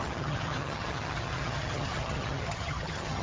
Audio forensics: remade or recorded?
remade